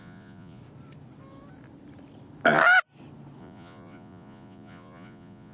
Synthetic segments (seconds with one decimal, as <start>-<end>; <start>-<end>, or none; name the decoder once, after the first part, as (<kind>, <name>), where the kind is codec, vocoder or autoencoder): 0.0-0.6 (vocoder, Vocos); 3.4-5.5